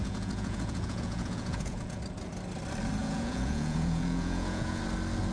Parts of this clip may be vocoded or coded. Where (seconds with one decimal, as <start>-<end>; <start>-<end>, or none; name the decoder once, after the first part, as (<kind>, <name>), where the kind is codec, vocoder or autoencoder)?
0.0-2.0 (vocoder, Vocos); 3.0-4.8